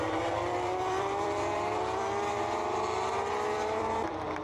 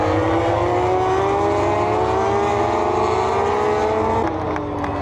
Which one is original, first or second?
second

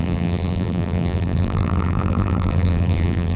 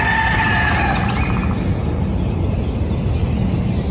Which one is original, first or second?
second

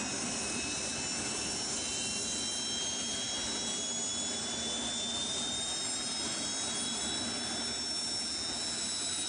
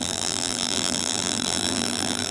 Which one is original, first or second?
first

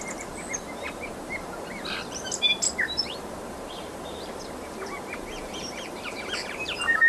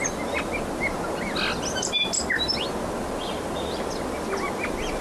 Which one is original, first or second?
second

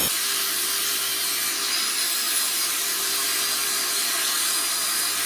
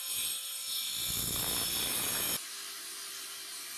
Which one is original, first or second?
second